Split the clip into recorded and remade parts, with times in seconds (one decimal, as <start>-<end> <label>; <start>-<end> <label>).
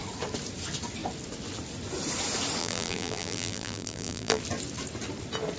0.0-2.6 recorded; 2.6-4.4 remade; 4.4-5.6 recorded